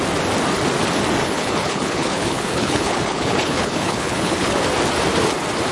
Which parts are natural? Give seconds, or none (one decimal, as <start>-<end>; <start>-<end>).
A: 0.0-1.2; 4.6-5.7